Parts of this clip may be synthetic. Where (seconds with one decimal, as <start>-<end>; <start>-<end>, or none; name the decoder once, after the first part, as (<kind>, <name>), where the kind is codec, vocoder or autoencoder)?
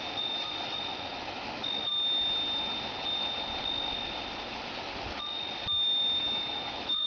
0.0-1.9 (autoencoder, DAC-VAE); 6.2-7.1